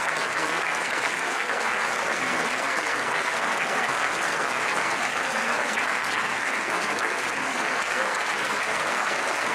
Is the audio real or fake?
fake